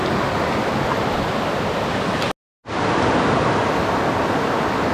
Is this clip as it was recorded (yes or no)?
yes